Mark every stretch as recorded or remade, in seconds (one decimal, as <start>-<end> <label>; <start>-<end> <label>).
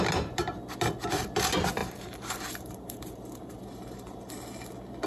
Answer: 0.0-1.8 recorded; 1.8-4.3 remade; 4.3-5.1 recorded